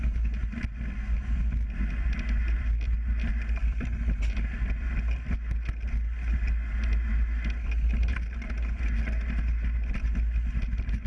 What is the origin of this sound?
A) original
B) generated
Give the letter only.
A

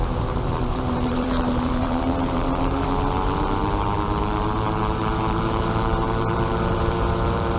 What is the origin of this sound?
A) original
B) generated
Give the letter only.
B